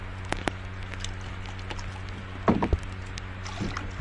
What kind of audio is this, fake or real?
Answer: real